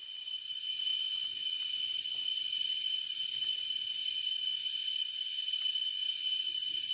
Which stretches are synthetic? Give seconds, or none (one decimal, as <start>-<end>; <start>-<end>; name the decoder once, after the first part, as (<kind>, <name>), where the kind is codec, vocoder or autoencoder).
none